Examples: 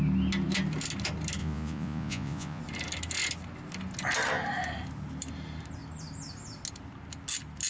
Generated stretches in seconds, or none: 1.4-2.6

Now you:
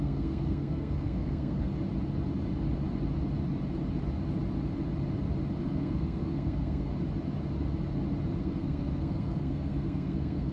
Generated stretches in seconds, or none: 0.0-1.7; 5.6-6.9; 8.4-10.5

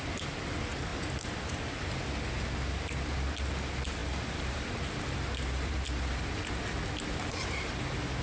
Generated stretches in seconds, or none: 0.9-1.9; 4.0-6.6

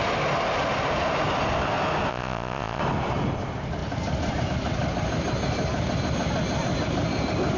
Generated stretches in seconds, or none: 2.1-2.8